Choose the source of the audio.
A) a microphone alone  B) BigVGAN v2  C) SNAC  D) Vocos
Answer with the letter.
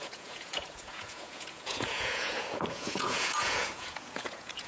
D